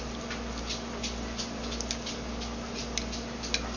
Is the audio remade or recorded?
recorded